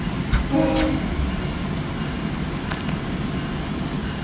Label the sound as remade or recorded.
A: recorded